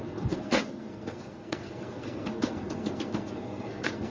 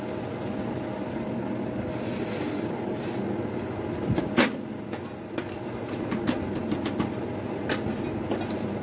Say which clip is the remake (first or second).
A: first